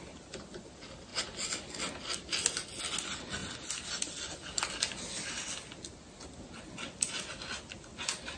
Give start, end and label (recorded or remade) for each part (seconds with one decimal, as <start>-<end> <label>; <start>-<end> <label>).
0.0-8.4 recorded